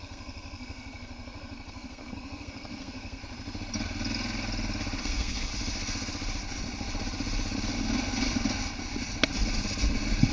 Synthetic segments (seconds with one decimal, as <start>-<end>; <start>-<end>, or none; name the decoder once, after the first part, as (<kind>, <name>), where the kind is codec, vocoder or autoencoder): 0.0-3.2 (codec, SNAC); 5.0-5.5